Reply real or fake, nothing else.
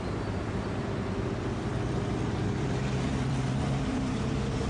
fake